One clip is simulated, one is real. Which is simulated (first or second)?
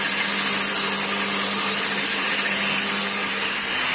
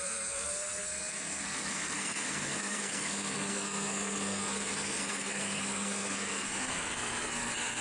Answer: second